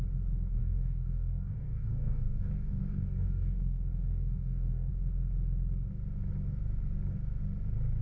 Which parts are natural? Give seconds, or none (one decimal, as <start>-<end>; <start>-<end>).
0.0-0.6; 4.9-8.0

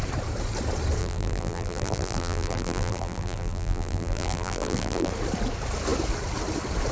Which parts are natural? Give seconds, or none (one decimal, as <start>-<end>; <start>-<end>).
0.0-1.0; 5.1-6.9

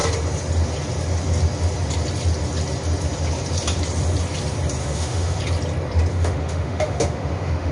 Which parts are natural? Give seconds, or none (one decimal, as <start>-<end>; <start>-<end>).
0.0-4.8; 5.4-6.1

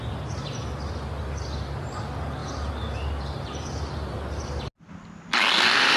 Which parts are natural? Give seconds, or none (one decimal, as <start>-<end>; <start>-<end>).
0.0-6.0

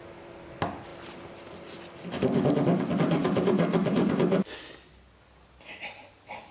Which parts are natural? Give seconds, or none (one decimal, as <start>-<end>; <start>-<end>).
0.0-6.5

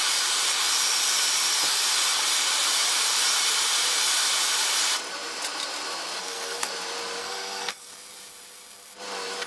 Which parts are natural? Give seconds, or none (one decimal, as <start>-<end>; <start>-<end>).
0.0-6.2; 6.7-7.2; 7.9-9.5

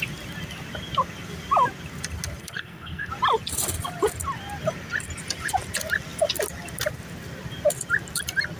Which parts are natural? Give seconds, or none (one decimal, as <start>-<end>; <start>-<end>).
0.0-2.4; 3.1-8.6